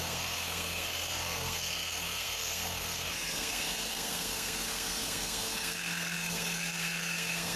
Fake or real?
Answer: fake